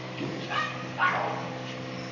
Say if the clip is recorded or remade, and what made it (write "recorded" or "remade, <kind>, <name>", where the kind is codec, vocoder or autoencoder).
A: remade, codec, DAC